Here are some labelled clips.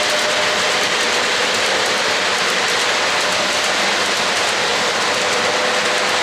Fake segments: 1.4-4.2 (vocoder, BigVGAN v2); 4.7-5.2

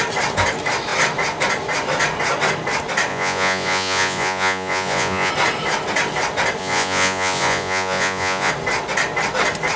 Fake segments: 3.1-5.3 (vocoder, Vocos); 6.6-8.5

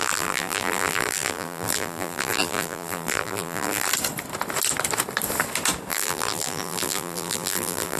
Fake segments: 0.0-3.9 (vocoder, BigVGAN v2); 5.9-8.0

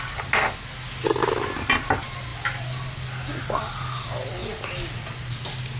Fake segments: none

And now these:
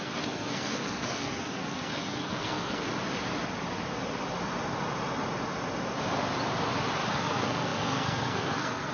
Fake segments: 0.0-2.9 (codec, SNAC); 7.1-8.9